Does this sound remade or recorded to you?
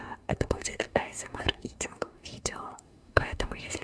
remade